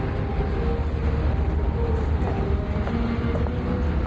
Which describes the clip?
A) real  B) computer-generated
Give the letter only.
A